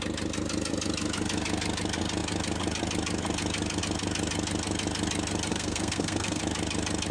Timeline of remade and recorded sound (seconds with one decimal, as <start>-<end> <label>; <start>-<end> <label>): 0.0-5.5 recorded; 5.5-6.4 remade; 6.4-7.1 recorded